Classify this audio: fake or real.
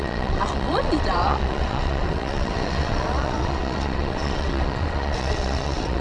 fake